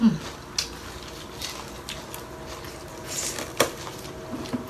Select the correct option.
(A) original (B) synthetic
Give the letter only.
A